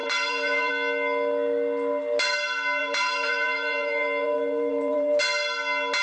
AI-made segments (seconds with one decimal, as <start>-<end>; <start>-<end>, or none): 0.0-0.7; 2.8-5.2